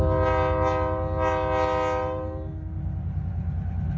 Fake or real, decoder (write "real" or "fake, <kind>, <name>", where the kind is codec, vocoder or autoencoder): real